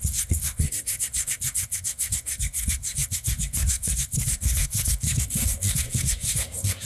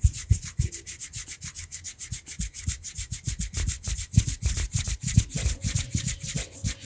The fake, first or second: first